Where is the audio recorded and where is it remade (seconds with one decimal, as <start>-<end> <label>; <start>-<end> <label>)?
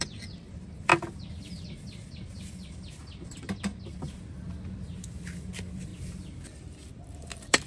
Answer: 0.0-0.9 remade; 0.9-5.5 recorded; 5.5-5.9 remade; 5.9-6.9 recorded; 6.9-7.7 remade